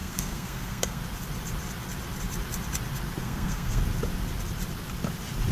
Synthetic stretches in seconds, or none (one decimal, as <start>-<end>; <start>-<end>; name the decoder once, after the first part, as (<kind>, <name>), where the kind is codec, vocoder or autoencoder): 0.0-1.0 (codec, SNAC); 3.2-3.8